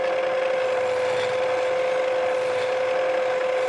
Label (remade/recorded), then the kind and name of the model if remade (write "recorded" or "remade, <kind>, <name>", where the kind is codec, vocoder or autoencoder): recorded